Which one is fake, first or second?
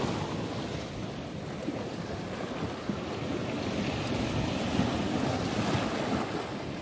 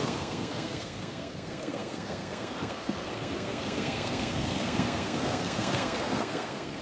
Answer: second